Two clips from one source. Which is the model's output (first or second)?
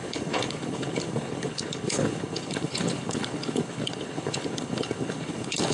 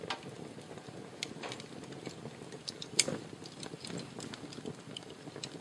first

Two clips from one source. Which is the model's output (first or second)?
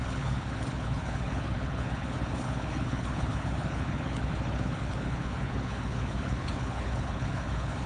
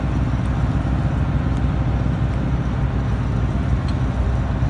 first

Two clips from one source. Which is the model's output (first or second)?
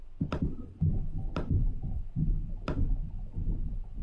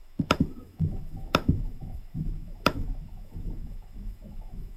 second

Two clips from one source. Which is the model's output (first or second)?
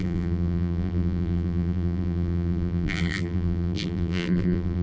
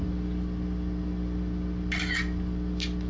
first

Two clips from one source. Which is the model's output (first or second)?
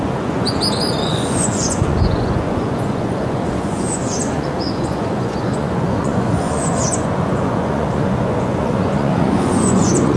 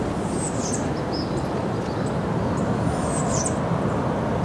first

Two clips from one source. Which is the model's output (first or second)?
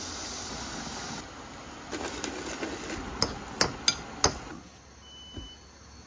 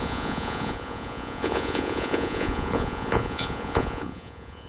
second